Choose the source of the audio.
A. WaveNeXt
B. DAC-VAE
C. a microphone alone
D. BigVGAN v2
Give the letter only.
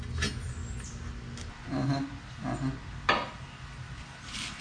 C